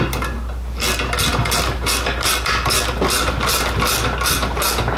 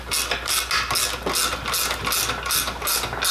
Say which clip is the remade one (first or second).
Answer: first